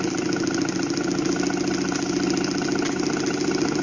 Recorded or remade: recorded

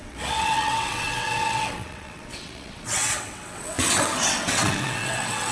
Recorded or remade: remade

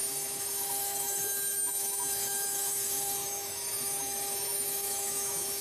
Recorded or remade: remade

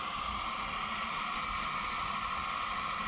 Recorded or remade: recorded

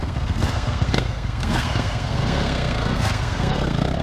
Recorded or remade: remade